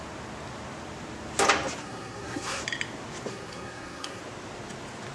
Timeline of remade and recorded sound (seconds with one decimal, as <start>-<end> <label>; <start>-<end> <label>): 0.0-1.8 recorded; 1.8-2.6 remade; 2.6-3.3 recorded; 3.3-4.2 remade; 4.2-5.1 recorded